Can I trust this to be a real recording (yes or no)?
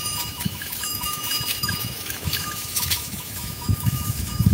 no